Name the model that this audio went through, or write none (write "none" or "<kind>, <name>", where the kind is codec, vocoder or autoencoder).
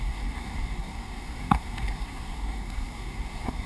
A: codec, SNAC